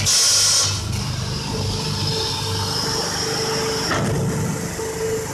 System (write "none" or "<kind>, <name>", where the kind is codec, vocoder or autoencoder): none